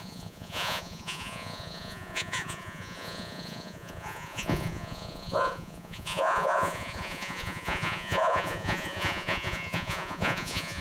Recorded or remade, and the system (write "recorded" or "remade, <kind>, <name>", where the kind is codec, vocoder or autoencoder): remade, vocoder, Vocos